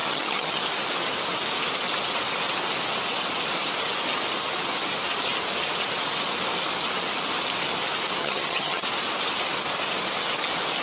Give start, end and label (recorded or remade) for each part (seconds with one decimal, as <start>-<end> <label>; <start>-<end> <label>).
0.0-0.6 remade; 0.6-8.2 recorded; 8.2-8.8 remade; 8.8-10.8 recorded